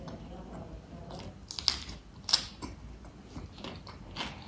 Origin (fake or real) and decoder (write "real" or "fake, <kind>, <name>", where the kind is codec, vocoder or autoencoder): real